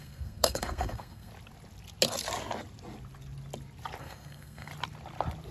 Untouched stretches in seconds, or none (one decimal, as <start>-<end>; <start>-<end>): 1.3-4.0; 4.7-5.5